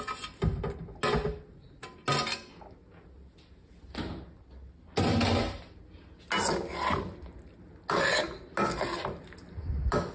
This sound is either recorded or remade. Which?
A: recorded